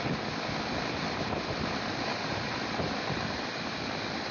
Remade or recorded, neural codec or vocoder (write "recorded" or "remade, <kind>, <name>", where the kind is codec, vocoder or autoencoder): recorded